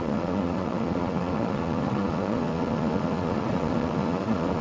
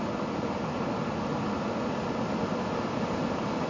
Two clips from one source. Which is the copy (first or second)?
first